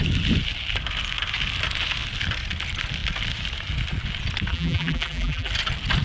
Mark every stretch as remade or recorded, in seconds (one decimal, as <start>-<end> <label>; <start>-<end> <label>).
0.0-4.5 recorded; 4.5-5.5 remade; 5.5-6.0 recorded